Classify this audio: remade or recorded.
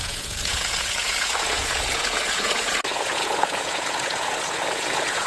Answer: remade